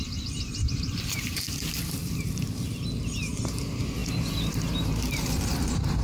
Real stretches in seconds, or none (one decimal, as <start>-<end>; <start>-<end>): none